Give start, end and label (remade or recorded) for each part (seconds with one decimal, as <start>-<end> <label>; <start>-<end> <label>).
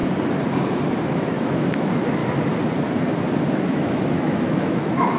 0.0-1.0 recorded; 1.0-2.2 remade; 2.2-3.5 recorded; 3.5-5.2 remade